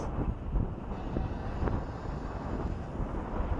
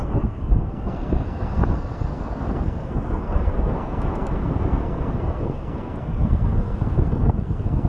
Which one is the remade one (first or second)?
second